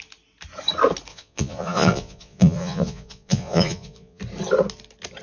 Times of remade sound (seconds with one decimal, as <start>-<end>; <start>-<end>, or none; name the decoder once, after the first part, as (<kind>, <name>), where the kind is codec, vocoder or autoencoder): 1.1-4.2 (vocoder, Vocos)

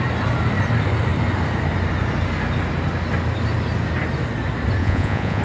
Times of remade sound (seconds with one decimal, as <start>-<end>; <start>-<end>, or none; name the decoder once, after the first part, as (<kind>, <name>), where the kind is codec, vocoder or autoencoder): 4.8-5.4 (vocoder, Vocos)

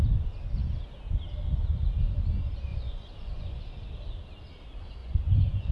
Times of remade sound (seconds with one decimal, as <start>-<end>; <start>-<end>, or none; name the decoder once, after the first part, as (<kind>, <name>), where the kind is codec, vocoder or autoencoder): 2.7-3.6 (vocoder, Vocos); 5.0-5.7

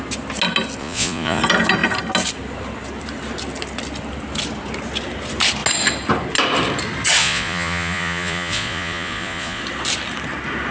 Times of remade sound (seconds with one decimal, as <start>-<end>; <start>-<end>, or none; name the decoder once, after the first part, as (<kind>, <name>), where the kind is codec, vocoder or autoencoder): 0.8-1.4 (vocoder, Vocos); 7.2-9.6

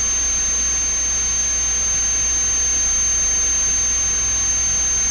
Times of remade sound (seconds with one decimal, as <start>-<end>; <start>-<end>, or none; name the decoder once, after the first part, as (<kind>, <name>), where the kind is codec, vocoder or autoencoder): none

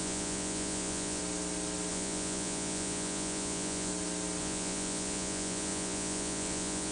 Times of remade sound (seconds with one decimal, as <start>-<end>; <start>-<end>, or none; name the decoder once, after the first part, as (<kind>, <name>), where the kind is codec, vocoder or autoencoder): 0.0-1.2 (vocoder, Vocos); 1.9-3.9; 4.4-6.9